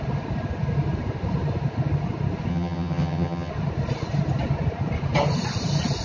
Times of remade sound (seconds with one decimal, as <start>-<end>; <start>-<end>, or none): 2.5-3.5